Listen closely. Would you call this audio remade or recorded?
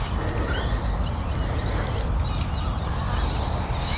recorded